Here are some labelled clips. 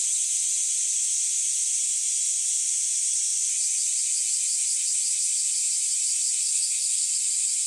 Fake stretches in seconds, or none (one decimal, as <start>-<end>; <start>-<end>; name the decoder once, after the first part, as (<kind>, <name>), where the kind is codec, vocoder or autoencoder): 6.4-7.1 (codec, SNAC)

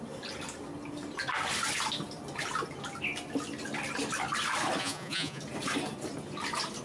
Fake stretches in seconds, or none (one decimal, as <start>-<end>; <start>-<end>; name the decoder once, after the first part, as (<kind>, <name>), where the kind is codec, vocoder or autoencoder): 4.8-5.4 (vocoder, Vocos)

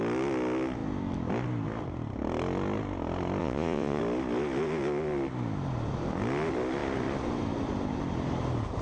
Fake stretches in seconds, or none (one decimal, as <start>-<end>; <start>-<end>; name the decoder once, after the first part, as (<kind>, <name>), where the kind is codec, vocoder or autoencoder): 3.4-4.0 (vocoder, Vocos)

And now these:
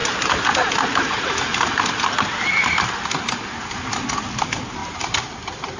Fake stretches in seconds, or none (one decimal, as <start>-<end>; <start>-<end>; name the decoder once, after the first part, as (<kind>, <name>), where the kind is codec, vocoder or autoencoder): 0.0-2.0 (vocoder, BigVGAN v2); 3.2-3.9; 4.8-5.8

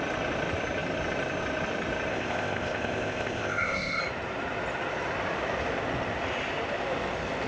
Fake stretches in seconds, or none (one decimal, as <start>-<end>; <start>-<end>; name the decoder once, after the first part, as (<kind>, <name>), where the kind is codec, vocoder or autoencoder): 2.1-4.0 (codec, ZipCodec)

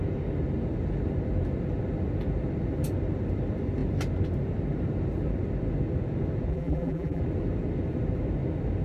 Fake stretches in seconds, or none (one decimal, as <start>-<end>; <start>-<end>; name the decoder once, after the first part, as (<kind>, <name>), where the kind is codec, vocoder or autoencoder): 6.5-7.2 (vocoder, BigVGAN v2)